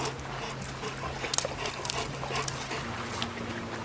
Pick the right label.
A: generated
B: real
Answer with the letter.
B